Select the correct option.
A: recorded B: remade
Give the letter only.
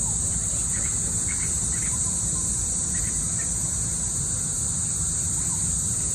B